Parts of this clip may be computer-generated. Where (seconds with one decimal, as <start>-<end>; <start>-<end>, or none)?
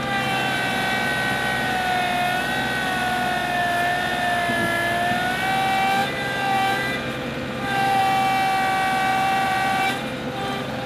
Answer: 6.0-8.0; 9.1-10.9